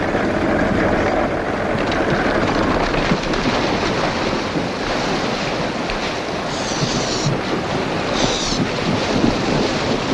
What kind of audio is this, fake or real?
real